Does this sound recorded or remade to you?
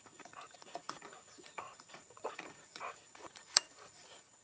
remade